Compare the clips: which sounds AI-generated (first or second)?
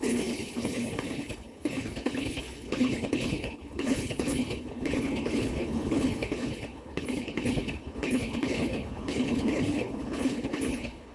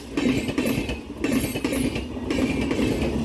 first